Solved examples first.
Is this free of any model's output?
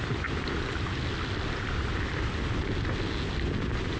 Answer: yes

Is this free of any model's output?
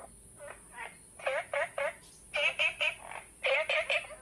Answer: yes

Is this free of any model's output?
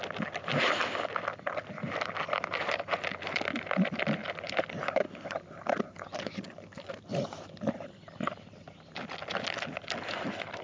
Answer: yes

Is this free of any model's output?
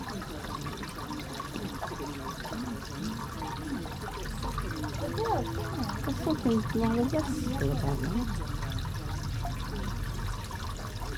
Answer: yes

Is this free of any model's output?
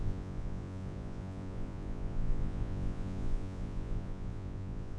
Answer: no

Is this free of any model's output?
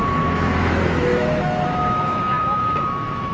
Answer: no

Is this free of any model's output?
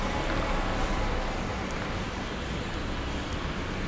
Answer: yes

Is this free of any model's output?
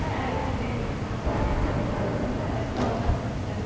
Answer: yes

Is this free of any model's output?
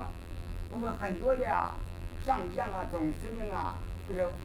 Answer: no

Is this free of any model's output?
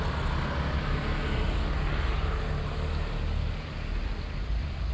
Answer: yes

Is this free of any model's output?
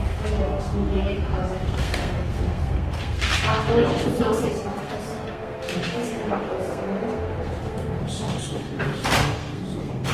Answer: no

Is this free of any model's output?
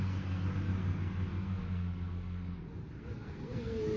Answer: no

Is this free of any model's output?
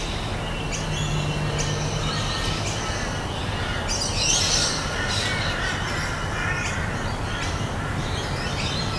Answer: yes